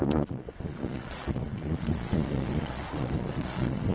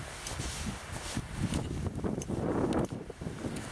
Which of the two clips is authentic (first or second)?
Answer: second